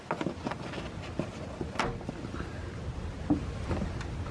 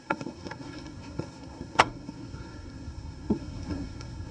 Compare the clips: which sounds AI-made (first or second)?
second